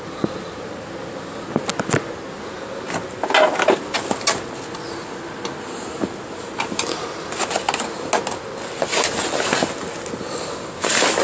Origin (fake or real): real